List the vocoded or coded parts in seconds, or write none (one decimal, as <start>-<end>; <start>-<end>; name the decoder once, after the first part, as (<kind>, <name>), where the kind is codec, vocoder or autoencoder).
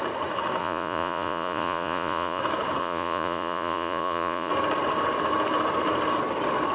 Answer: 0.6-2.4 (vocoder, Vocos); 2.8-4.5